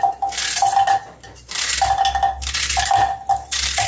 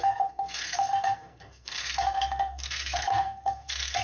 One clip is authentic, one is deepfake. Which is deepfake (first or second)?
second